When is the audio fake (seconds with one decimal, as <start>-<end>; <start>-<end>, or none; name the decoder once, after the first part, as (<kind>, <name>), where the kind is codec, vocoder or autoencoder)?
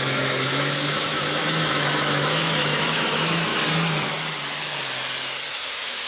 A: 0.0-3.5 (autoencoder, DAC-VAE); 5.5-6.1